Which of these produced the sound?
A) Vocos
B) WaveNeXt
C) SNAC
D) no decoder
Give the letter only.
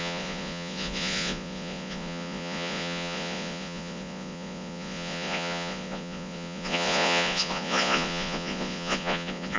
A